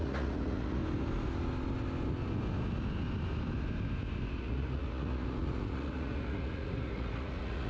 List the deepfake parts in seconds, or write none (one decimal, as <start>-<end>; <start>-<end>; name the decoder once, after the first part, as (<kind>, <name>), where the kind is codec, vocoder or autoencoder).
0.0-0.8 (vocoder, Vocos); 4.4-7.7